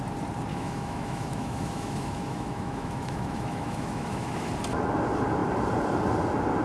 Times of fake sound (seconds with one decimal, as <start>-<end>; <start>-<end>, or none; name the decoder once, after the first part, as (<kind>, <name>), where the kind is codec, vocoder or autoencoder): 0.5-4.5 (autoencoder, DAC-VAE)